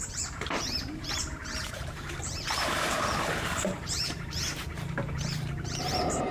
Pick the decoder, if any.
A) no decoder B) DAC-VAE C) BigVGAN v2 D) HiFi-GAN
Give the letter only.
C